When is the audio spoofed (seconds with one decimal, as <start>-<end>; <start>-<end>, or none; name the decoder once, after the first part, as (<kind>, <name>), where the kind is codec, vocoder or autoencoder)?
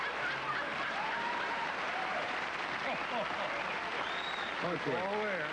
0.7-2.4 (vocoder, BigVGAN v2)